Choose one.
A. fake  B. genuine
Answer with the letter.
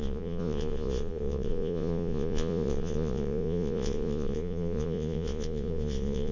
A